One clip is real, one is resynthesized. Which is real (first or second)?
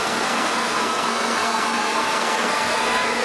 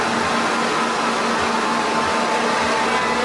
second